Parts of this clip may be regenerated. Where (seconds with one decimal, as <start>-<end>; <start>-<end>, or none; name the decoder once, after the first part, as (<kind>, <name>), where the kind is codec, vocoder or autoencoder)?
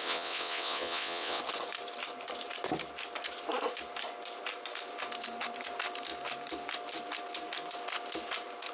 0.0-1.4 (vocoder, WaveNeXt)